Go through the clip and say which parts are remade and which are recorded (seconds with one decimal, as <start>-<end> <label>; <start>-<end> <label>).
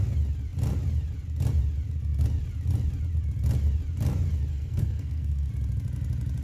0.0-4.5 recorded; 4.5-5.5 remade; 5.5-6.4 recorded